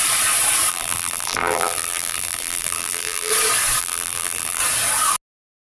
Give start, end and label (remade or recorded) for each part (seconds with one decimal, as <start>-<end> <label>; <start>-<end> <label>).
0.0-0.7 recorded; 0.7-3.3 remade; 3.3-3.8 recorded; 3.8-4.6 remade; 4.6-5.8 recorded